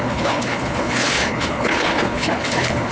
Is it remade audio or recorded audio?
remade